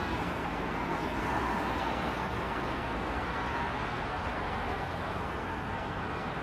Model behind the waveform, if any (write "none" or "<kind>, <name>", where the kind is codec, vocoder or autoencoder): codec, SNAC